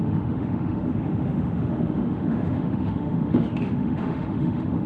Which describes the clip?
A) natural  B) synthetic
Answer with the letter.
B